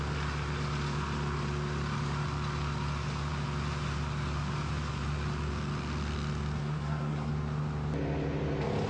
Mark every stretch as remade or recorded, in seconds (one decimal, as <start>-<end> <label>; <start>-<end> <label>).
0.0-6.6 recorded; 6.6-7.3 remade; 7.3-8.9 recorded